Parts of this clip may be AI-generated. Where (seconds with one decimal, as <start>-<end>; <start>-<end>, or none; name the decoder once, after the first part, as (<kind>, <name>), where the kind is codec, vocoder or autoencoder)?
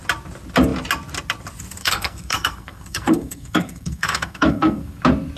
1.8-5.0 (codec, SNAC)